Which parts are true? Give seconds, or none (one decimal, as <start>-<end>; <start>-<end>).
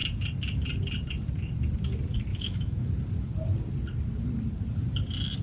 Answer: 0.0-2.3; 2.9-5.4